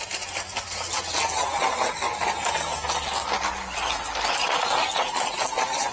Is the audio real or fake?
real